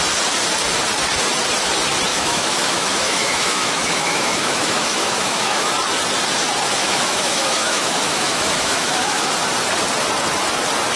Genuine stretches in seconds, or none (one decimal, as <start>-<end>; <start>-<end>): 0.0-2.1; 5.7-6.8; 9.3-11.0